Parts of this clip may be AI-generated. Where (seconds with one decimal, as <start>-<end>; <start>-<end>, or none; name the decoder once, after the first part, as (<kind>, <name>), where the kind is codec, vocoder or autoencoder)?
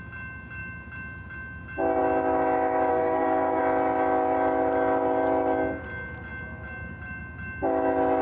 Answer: 2.9-3.6 (codec, SNAC)